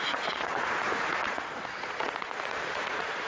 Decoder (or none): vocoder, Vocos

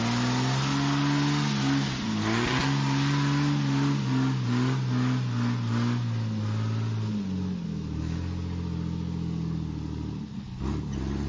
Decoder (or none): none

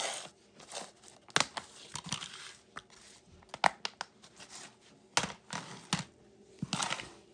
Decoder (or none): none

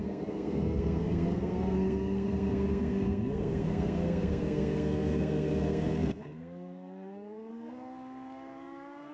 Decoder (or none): codec, SNAC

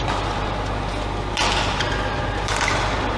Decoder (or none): none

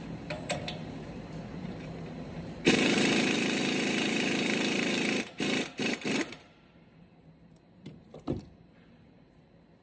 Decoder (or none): vocoder, BigVGAN v2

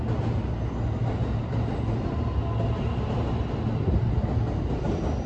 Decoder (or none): none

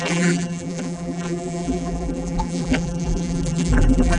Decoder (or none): vocoder, BigVGAN v2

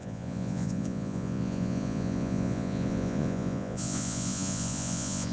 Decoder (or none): vocoder, Vocos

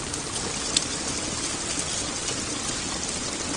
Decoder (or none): none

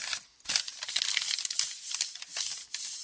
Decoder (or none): none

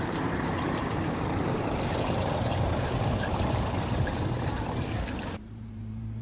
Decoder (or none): vocoder, BigVGAN v2